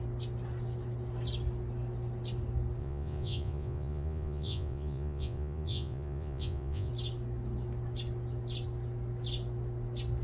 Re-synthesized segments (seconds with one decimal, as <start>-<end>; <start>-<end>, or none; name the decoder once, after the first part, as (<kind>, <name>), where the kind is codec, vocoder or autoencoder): 2.8-6.9 (vocoder, Vocos)